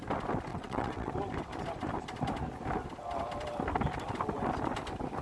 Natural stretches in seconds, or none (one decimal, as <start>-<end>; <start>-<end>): 0.0-0.5; 1.1-5.2